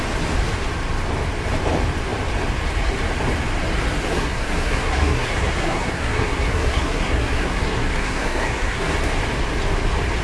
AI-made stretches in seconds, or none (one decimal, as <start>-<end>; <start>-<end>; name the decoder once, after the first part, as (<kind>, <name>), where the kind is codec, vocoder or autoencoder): 4.1-8.9 (codec, SNAC)